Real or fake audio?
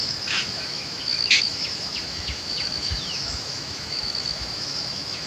fake